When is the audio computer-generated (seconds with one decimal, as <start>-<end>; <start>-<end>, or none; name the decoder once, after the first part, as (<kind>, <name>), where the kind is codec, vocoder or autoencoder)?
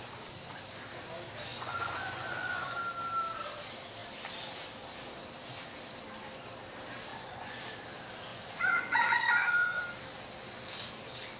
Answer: 1.5-2.8 (vocoder, Vocos); 7.1-7.6; 8.3-9.8